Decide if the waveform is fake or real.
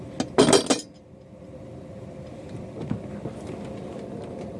real